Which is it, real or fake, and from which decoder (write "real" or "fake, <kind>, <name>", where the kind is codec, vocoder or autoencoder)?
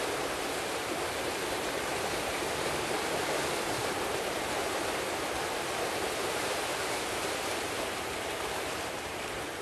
fake, vocoder, BigVGAN v2